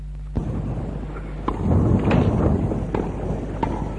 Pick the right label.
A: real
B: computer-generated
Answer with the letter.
A